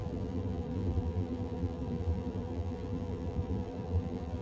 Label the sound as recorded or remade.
remade